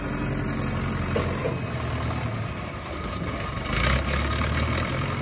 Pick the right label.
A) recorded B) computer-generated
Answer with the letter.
A